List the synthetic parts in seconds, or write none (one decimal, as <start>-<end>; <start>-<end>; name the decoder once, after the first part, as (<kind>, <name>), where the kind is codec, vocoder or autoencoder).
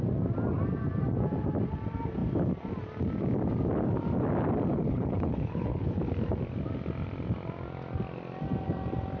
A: 4.7-6.0 (codec, HILCodec)